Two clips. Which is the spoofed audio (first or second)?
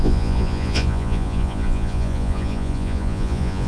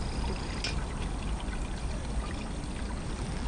first